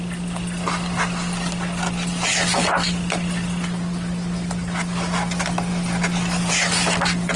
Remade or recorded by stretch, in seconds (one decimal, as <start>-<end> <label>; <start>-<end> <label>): 0.0-7.4 recorded